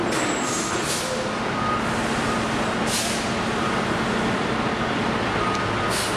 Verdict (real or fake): real